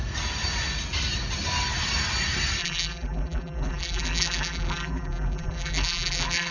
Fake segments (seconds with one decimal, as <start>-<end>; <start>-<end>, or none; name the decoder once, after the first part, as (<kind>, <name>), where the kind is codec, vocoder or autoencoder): 2.6-6.5 (vocoder, BigVGAN v2)